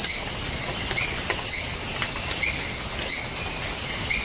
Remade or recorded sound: recorded